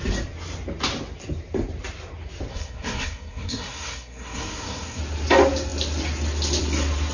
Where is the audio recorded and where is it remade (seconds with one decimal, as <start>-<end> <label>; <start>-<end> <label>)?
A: 0.0-2.5 recorded; 2.5-5.0 remade; 5.0-7.1 recorded